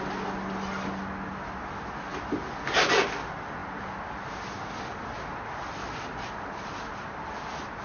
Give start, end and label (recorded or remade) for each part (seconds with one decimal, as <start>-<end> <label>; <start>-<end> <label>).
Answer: 0.0-7.8 recorded